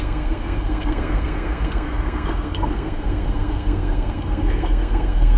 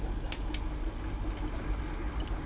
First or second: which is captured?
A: second